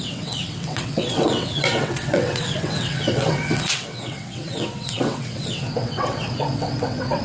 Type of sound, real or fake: fake